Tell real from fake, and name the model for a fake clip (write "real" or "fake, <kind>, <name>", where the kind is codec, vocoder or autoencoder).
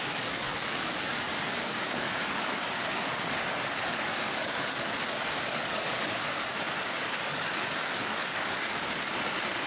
fake, codec, DAC